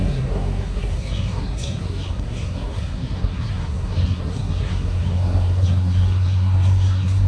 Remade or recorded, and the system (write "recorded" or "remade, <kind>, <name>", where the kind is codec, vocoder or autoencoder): remade, codec, SNAC